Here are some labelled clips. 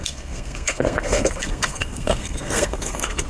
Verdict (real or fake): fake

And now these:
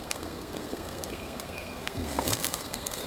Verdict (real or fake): fake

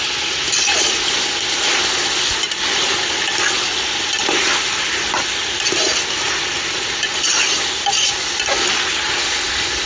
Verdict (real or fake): real